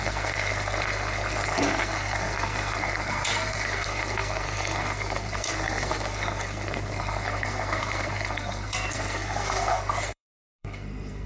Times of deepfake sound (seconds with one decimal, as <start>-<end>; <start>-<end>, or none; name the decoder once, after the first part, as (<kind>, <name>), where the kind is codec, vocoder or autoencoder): 0.0-11.3 (codec, SNAC)